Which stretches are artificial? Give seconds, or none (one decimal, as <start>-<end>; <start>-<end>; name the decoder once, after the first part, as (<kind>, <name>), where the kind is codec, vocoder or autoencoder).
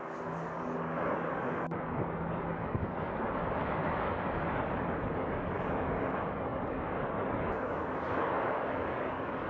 0.0-9.5 (codec, DAC)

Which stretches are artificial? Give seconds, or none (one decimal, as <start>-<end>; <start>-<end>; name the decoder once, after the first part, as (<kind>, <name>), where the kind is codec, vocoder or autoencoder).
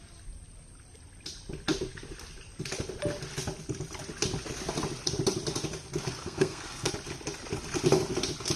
6.2-6.9 (codec, SNAC)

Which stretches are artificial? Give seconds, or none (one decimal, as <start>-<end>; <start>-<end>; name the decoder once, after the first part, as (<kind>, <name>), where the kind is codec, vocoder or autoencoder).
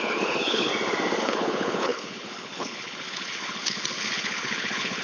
0.0-0.7 (codec, HILCodec); 1.2-5.0